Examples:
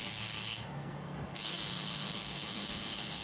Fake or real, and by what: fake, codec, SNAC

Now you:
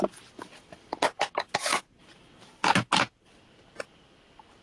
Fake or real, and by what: real